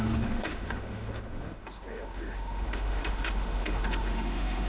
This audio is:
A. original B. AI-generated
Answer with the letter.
B